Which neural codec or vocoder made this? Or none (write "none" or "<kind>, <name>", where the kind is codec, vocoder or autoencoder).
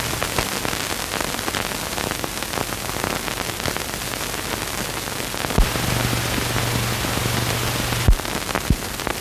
none